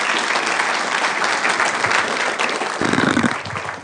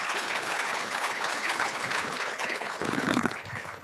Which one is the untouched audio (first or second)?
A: first